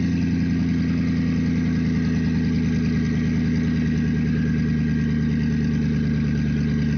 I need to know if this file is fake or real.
real